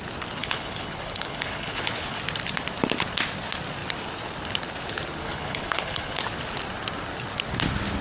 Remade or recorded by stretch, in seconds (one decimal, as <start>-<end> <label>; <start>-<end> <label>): 0.0-0.4 recorded; 0.4-2.2 remade; 2.2-5.2 recorded; 5.2-6.2 remade; 6.2-8.0 recorded